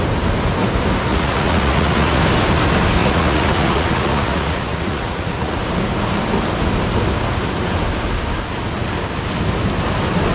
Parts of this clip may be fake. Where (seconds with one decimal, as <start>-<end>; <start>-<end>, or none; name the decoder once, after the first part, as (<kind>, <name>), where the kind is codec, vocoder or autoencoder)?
1.1-2.2 (vocoder, Vocos); 3.0-5.6